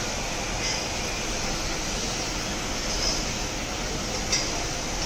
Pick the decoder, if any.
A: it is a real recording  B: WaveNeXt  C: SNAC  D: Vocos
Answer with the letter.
A